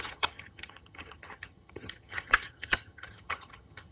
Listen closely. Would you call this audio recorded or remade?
remade